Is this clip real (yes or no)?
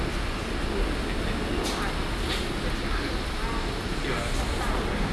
yes